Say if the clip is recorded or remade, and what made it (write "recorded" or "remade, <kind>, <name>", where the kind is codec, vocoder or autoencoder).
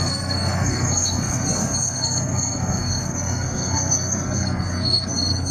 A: remade, codec, SNAC